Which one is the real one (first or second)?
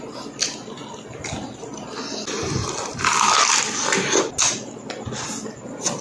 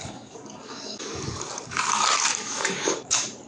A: first